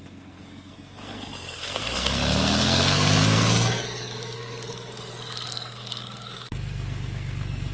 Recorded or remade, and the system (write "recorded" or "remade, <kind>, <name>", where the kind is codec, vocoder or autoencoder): remade, codec, SNAC